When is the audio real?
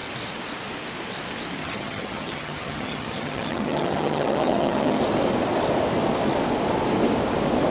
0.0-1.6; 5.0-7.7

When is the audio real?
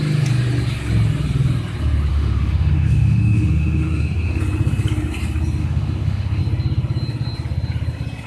0.0-2.1; 4.4-5.6; 6.4-8.3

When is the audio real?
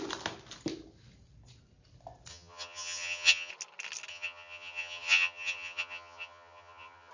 0.0-2.3; 3.5-4.1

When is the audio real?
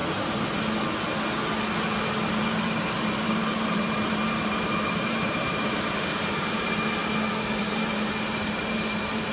0.0-2.4; 7.0-7.6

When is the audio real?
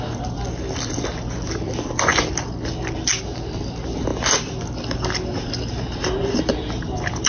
0.0-7.3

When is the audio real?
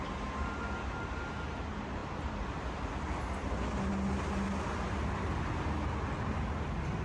0.0-7.0